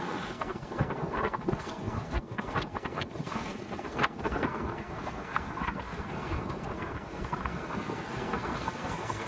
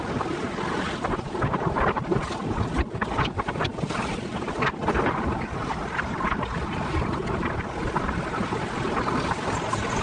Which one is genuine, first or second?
second